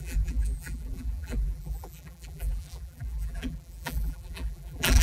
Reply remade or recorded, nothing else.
remade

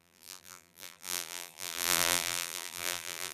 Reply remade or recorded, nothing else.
remade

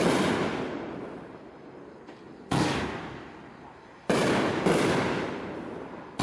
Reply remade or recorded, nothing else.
recorded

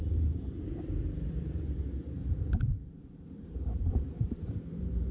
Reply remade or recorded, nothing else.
remade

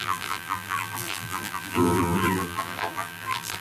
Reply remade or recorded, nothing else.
remade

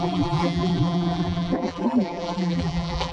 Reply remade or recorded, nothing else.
remade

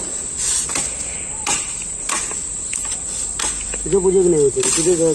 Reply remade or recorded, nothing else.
recorded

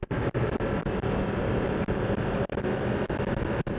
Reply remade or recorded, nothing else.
recorded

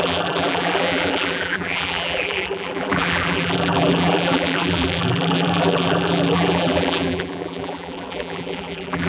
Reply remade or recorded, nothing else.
remade